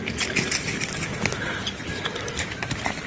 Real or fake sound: real